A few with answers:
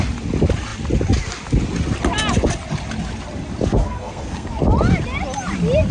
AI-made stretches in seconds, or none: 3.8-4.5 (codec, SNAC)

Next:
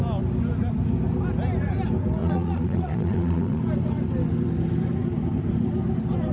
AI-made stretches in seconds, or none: 2.2-3.6 (vocoder, Vocos)